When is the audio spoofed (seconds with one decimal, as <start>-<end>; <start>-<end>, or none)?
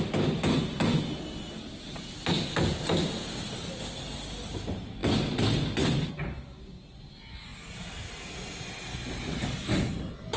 none